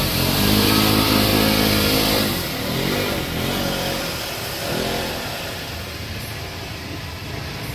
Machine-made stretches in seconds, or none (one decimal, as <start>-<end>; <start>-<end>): none